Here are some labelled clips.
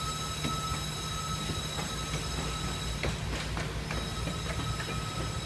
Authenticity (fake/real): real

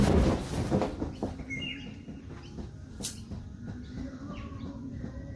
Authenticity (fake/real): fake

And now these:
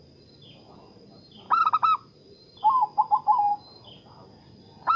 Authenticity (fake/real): real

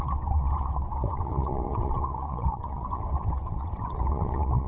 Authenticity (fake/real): fake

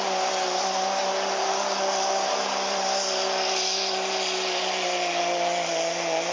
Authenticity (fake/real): fake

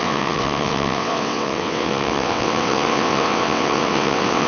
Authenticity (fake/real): fake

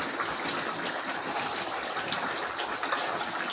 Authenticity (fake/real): real